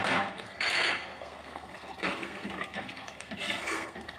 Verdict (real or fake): fake